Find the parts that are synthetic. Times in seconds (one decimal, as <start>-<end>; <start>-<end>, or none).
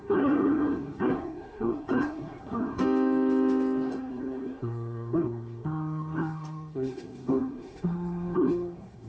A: 0.0-2.8; 3.9-9.1